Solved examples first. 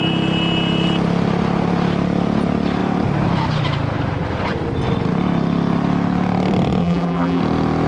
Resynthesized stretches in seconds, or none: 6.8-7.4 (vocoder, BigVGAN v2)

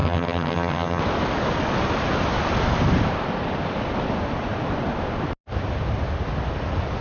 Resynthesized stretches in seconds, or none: 0.0-1.0 (vocoder, HiFi-GAN)

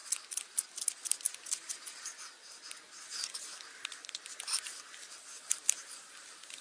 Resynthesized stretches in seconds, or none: none

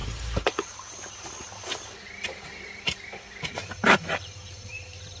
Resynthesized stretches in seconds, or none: 0.0-5.2 (vocoder, BigVGAN v2)

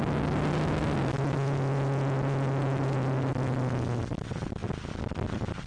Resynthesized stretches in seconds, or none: none

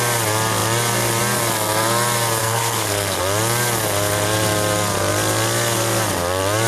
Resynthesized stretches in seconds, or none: 2.4-3.2 (codec, SNAC)